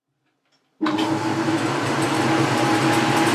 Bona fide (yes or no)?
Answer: yes